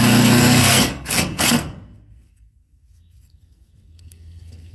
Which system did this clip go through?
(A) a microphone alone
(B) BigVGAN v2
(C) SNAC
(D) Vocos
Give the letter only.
C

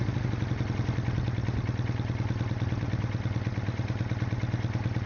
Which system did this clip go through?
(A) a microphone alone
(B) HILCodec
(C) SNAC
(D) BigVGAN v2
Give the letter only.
A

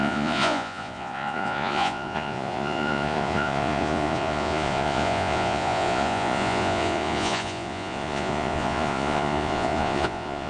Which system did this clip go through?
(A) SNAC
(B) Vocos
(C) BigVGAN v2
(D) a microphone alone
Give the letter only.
B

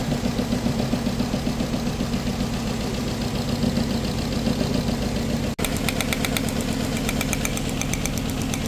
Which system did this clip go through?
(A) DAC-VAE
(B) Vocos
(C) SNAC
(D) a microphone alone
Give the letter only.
D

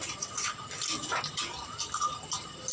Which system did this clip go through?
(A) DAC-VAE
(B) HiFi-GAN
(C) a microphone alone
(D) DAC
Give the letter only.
C